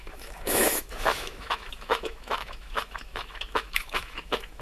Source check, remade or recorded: remade